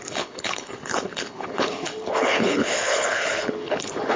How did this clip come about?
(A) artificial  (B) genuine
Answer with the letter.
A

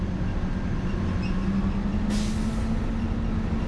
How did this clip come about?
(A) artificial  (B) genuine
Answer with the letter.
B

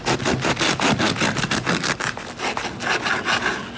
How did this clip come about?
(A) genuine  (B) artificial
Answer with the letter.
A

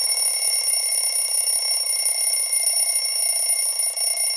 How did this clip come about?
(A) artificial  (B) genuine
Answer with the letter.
A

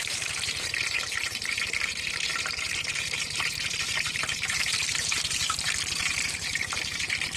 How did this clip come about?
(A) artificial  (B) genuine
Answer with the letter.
A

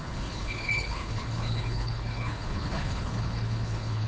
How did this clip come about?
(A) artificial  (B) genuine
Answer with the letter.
A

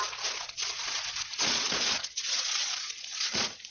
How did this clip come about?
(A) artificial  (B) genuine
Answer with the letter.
A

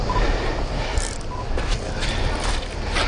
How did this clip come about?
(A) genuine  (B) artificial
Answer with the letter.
A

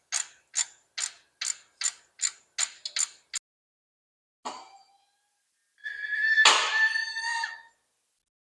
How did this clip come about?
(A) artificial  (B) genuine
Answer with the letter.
B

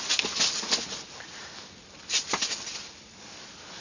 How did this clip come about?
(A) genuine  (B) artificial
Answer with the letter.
A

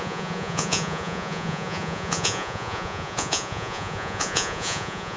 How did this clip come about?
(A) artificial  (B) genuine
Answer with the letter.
A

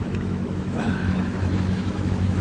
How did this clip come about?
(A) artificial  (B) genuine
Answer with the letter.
A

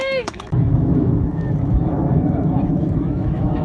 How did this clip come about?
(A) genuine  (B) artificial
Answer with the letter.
B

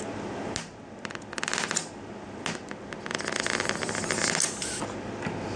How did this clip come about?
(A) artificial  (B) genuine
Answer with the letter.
B